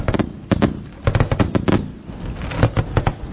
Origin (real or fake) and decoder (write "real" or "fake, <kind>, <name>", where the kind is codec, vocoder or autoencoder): real